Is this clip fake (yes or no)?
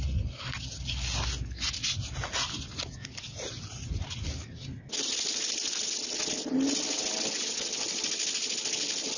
no